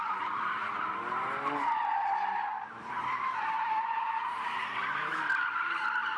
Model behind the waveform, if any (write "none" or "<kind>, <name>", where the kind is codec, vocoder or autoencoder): none